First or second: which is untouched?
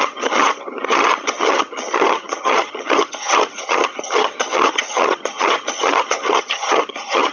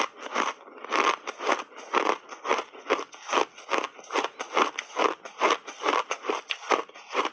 second